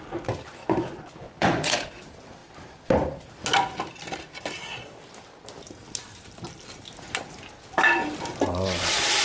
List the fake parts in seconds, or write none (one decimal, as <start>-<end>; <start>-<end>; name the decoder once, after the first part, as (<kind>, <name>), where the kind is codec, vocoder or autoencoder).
0.6-1.9 (vocoder, Vocos)